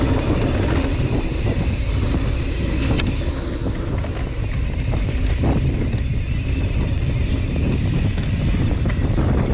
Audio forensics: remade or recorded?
recorded